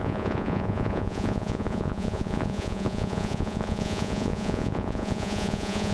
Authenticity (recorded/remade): remade